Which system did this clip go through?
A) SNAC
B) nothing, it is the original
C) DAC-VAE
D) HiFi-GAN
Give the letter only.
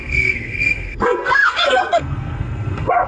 A